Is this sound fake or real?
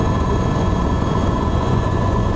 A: fake